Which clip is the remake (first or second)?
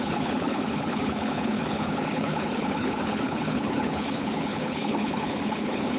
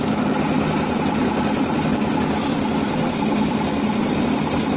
first